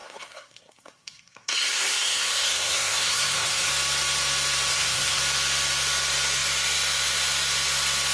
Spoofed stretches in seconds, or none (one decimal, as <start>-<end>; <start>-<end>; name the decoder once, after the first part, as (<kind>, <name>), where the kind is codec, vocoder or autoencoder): 0.0-3.7 (codec, SNAC); 4.7-5.2

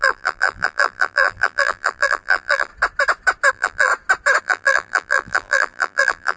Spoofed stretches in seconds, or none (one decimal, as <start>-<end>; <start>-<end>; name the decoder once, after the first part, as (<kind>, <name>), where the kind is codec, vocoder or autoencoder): 0.0-2.7 (vocoder, BigVGAN v2); 3.5-3.9; 4.4-6.4